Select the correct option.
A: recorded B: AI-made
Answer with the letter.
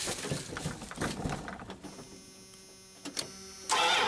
A